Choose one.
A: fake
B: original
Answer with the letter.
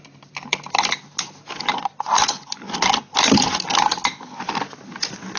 B